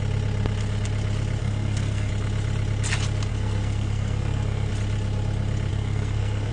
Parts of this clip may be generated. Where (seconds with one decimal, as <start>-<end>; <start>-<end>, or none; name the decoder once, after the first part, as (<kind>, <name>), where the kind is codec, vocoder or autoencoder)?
1.4-2.1 (codec, SNAC); 3.3-4.7; 5.7-6.5

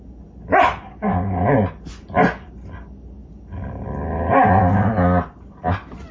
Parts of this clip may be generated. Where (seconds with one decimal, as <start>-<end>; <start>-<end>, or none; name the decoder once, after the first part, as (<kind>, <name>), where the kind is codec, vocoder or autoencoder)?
none

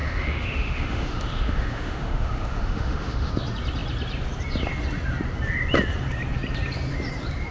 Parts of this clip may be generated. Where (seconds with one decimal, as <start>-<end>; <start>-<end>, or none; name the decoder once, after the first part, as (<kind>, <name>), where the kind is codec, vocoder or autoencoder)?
0.0-3.3 (autoencoder, DAC-VAE)

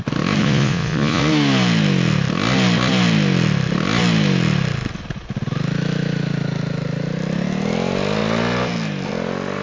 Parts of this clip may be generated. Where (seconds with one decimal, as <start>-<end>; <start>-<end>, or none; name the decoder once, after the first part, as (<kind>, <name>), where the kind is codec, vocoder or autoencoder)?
0.4-1.2 (vocoder, Vocos)

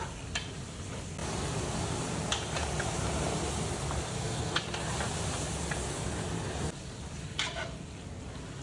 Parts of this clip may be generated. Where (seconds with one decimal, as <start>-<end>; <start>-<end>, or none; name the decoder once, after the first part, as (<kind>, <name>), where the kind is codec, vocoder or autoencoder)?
4.1-4.6 (codec, SNAC)

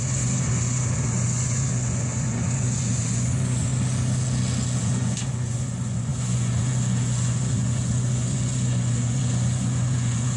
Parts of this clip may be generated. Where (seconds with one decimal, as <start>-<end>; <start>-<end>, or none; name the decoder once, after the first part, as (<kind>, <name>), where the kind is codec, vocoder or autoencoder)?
0.0-3.7 (vocoder, Vocos); 4.8-10.4

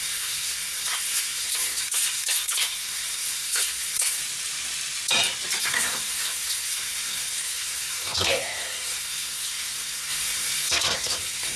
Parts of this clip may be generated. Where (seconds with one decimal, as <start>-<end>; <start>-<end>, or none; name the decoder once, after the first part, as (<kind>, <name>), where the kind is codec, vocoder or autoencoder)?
0.0-4.2 (codec, SNAC); 5.6-11.6

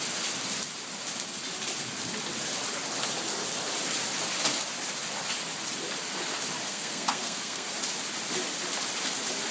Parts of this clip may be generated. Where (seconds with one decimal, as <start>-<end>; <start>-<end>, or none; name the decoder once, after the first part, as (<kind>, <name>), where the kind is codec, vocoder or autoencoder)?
6.7-7.7 (codec, SNAC)